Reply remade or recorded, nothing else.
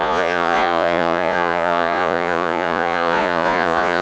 remade